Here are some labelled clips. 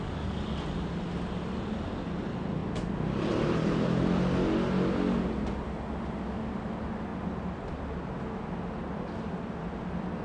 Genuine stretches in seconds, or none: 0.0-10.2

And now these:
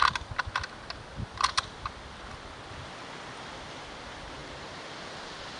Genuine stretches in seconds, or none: 0.0-5.6

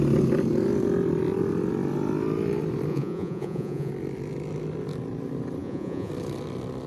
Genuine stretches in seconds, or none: 0.0-2.9; 3.9-5.6; 6.1-6.9